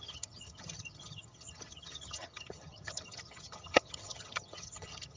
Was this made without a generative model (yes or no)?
no